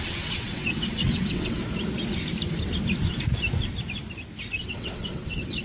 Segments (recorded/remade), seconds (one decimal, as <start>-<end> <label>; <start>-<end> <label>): 0.0-1.6 remade; 1.6-4.6 recorded; 4.6-5.6 remade